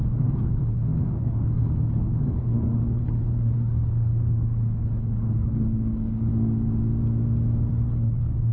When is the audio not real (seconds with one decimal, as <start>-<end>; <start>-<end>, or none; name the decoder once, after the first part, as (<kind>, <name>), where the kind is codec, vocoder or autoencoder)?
0.0-6.3 (codec, HILCodec); 7.7-8.5